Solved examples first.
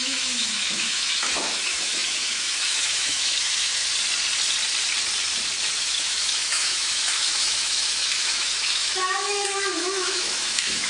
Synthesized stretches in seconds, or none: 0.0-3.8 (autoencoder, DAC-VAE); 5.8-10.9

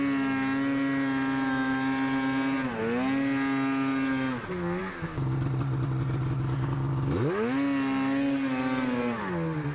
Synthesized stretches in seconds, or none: none

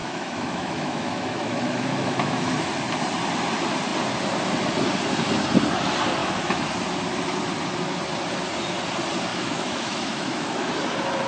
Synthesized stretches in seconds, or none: 0.0-2.7 (autoencoder, DAC-VAE); 6.2-6.7; 9.3-10.7

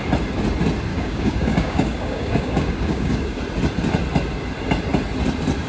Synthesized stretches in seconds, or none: 0.9-3.4 (codec, DAC)

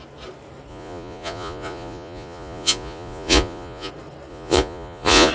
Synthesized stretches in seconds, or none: 0.7-3.9 (vocoder, Vocos); 4.3-5.3

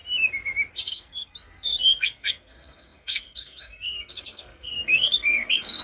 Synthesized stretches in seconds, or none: 0.9-5.8 (codec, SNAC)

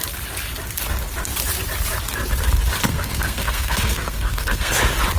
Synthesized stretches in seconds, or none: 2.9-4.7 (codec, SNAC)